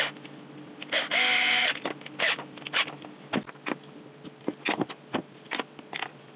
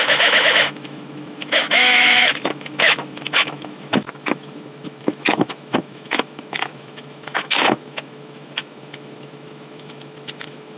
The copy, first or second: second